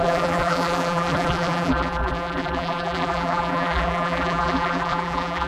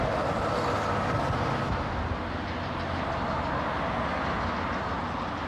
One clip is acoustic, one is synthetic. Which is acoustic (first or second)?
second